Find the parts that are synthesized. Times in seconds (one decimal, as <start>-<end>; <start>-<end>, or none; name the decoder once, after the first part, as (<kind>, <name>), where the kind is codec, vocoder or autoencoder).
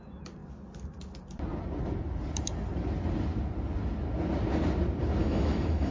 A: 5.2-5.9 (autoencoder, DAC-VAE)